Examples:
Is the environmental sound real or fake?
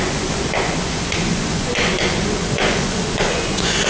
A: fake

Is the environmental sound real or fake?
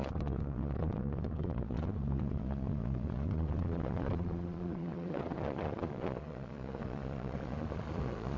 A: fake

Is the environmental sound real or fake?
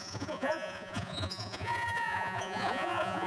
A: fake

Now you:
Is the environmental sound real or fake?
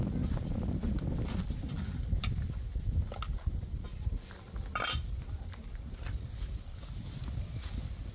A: real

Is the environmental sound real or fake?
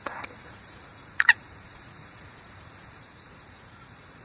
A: fake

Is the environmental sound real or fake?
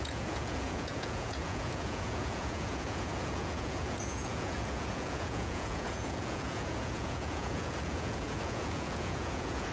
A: fake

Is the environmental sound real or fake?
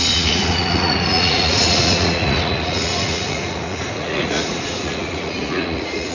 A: fake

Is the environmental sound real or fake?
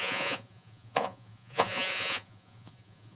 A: fake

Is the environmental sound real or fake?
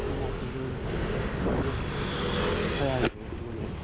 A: real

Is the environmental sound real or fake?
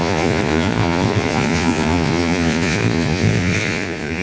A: fake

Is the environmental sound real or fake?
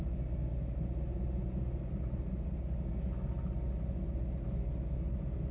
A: real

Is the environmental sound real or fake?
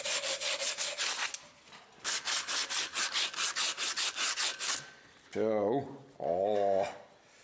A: real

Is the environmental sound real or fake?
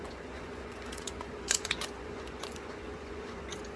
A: fake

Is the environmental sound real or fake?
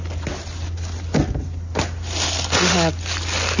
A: real